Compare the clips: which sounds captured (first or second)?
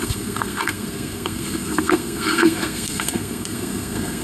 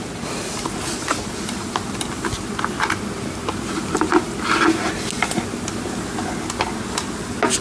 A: second